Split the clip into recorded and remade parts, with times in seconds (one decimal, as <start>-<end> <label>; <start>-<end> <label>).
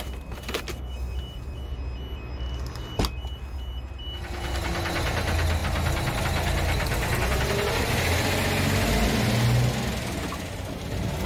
0.0-11.3 recorded